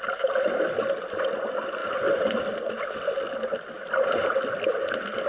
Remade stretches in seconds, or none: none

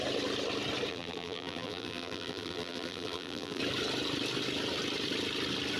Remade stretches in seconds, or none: 0.9-3.6 (vocoder, BigVGAN v2)

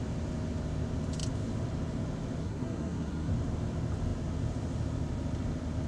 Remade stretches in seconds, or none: 2.4-3.3 (codec, SNAC)

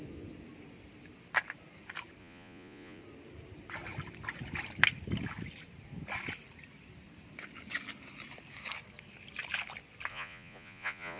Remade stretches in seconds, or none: 2.2-3.0 (vocoder, Vocos); 10.1-11.2